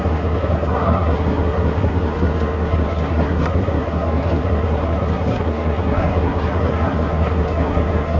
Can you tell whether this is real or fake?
fake